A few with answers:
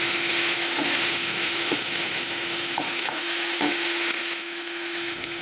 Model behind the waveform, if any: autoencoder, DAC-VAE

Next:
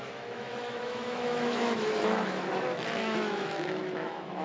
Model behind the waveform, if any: autoencoder, DAC-VAE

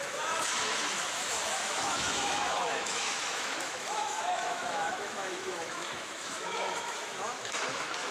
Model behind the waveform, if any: autoencoder, DAC-VAE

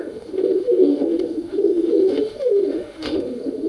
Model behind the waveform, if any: autoencoder, DAC-VAE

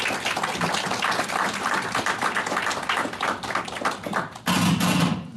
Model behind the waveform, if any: none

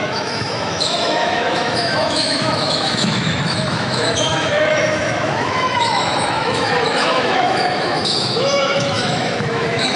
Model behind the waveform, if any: autoencoder, DAC-VAE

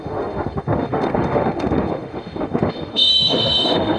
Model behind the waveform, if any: autoencoder, DAC-VAE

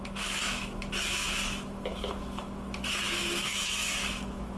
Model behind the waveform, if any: autoencoder, DAC-VAE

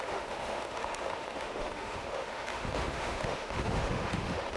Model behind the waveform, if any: autoencoder, DAC-VAE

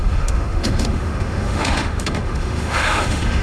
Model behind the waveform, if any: autoencoder, DAC-VAE